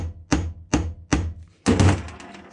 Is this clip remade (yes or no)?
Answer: no